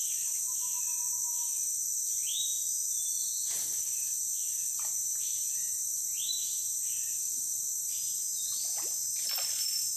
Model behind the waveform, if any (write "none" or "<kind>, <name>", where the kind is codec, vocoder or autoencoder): none